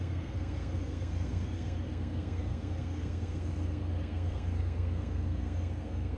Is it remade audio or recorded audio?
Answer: remade